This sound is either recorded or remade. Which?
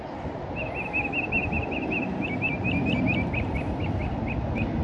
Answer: recorded